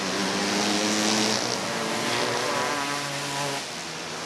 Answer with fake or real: real